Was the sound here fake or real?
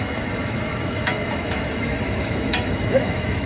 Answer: fake